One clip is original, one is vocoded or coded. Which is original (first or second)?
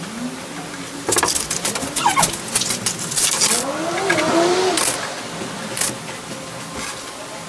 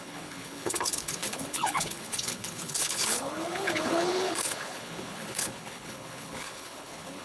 first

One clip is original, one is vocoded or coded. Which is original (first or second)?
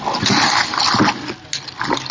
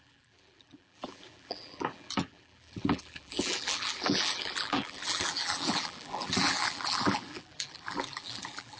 first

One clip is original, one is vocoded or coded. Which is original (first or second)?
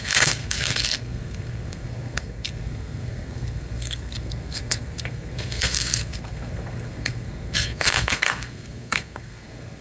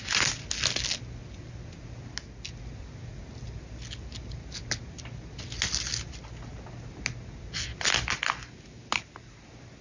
second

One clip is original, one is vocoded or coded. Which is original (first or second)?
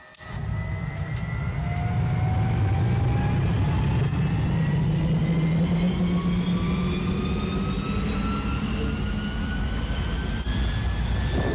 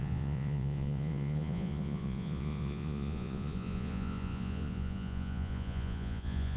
first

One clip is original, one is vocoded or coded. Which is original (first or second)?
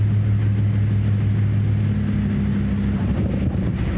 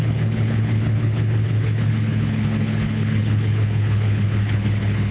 first